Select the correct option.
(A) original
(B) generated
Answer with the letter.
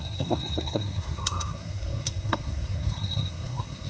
B